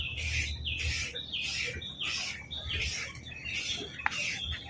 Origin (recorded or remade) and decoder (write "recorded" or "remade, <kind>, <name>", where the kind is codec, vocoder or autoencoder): recorded